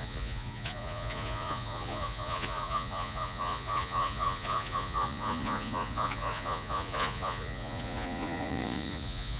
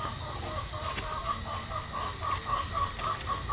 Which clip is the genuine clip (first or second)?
second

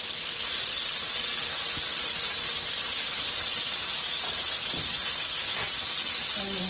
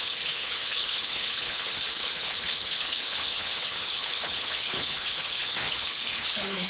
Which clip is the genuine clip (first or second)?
first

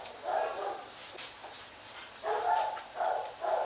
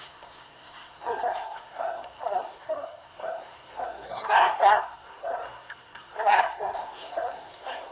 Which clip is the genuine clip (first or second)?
first